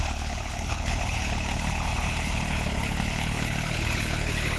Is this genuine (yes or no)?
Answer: no